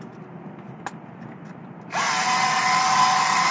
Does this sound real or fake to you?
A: real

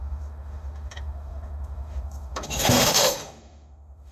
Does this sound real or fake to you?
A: fake